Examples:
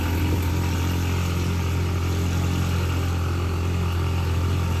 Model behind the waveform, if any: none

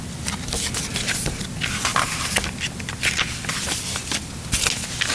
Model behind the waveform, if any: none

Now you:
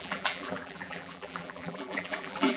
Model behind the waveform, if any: vocoder, BigVGAN v2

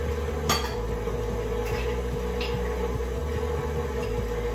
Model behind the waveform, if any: none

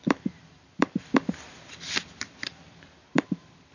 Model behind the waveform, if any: vocoder, BigVGAN v2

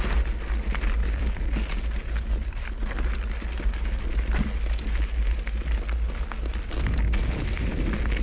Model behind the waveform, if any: none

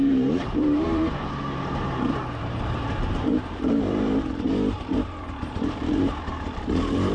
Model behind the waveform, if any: vocoder, BigVGAN v2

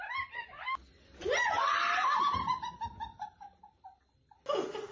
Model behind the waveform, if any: none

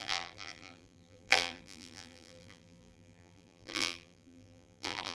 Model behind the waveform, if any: vocoder, BigVGAN v2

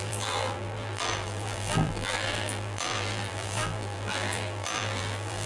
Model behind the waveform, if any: vocoder, BigVGAN v2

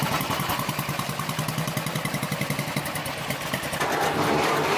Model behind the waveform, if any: none